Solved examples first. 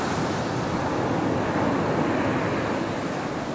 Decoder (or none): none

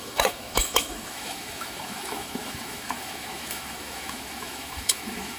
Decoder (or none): autoencoder, DAC-VAE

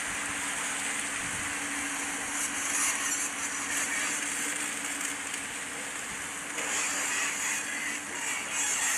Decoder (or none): none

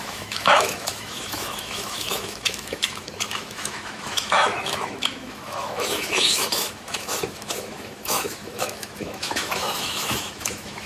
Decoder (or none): autoencoder, DAC-VAE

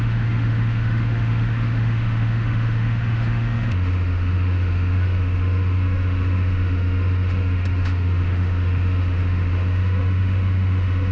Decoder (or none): autoencoder, DAC-VAE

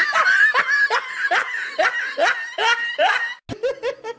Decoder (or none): none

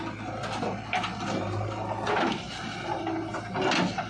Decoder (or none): none